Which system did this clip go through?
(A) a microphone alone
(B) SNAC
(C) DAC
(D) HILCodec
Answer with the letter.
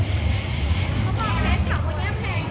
A